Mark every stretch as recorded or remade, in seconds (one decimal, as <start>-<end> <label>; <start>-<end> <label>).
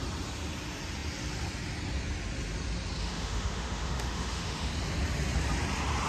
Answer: 0.0-3.0 recorded; 3.0-4.7 remade; 4.7-6.1 recorded